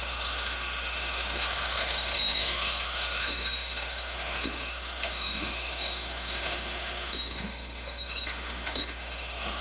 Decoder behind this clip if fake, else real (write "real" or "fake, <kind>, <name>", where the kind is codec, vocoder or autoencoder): fake, autoencoder, DAC-VAE